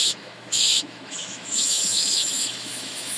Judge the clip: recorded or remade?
remade